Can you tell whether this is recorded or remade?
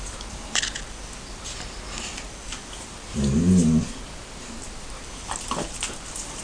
recorded